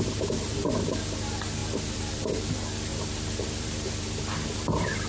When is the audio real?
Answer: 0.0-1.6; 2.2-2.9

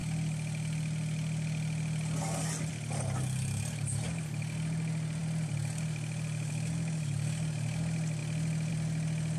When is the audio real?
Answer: 0.0-9.4

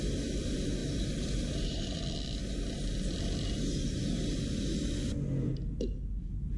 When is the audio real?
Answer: 0.0-0.8; 2.0-6.6

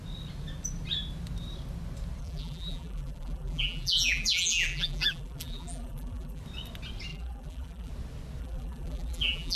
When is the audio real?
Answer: 0.0-2.2; 6.4-7.1; 7.9-8.4

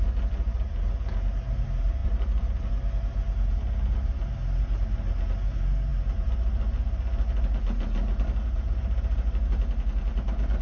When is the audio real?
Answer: 0.0-2.0; 2.7-5.9; 6.6-10.6

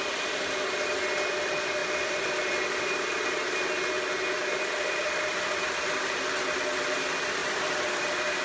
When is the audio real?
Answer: 0.0-1.8; 2.9-4.4; 5.9-7.4

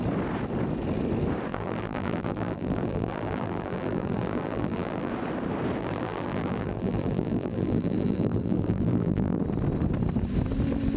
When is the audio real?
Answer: 0.0-1.5; 5.1-5.8; 9.4-11.0